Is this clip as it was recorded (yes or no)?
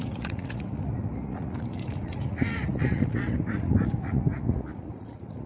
no